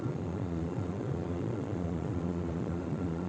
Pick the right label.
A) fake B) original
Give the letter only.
A